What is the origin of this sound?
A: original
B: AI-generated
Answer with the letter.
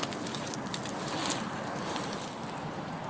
A